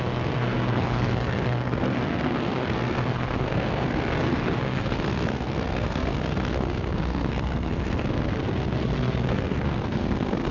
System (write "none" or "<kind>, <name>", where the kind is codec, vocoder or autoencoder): codec, SNAC